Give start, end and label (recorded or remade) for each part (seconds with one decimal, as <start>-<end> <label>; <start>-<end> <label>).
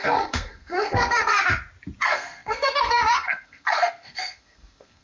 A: 0.0-1.4 remade; 1.4-2.0 recorded; 2.0-5.0 remade